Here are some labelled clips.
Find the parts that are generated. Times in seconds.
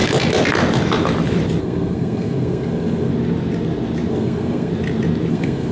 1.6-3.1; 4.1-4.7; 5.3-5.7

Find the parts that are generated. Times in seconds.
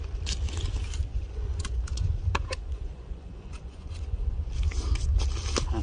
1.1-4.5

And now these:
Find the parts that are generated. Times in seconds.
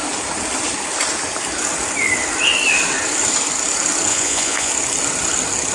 4.1-4.7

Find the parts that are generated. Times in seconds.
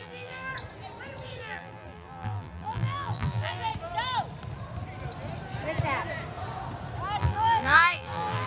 0.0-0.5; 1.4-3.7; 7.2-8.5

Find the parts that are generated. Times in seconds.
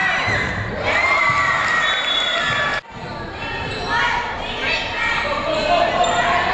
0.0-1.2; 2.7-3.4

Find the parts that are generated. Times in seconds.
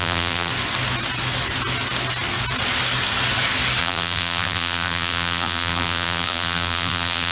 0.0-0.5; 3.8-7.3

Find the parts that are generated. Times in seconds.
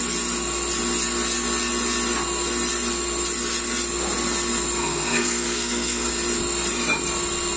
4.8-6.1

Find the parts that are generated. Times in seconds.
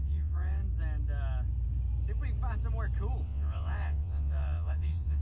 0.0-0.6; 3.2-5.2